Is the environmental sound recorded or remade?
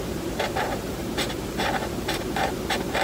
remade